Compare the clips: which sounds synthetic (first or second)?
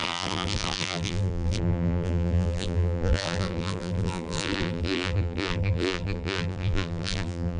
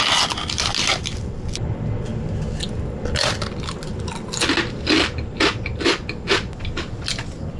first